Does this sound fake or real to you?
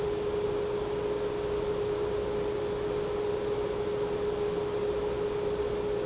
real